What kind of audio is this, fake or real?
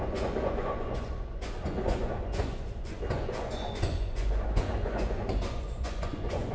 fake